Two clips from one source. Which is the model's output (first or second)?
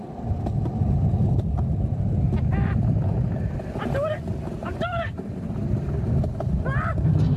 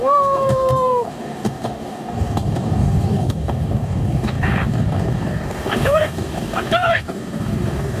second